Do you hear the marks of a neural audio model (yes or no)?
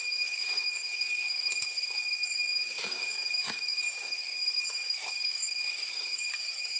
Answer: yes